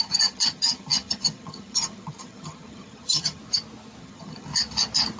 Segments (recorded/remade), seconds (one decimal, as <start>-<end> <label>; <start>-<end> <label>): 0.0-3.4 remade; 3.4-4.0 recorded; 4.0-4.5 remade; 4.5-5.2 recorded